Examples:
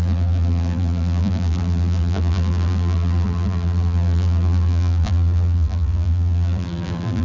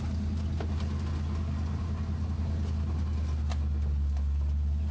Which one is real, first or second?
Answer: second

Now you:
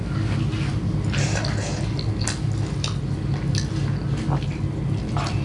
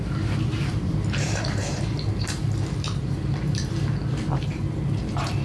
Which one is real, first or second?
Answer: first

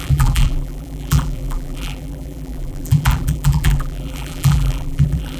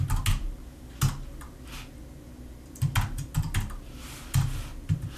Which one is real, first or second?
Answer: second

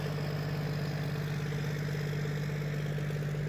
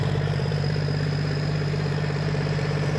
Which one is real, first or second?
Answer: first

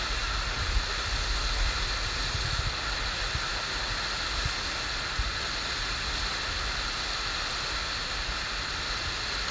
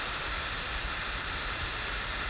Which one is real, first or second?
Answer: first